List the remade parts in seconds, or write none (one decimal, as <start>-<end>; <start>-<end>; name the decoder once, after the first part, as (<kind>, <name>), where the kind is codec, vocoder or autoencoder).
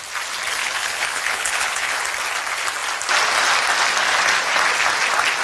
0.6-2.0 (codec, HILCodec)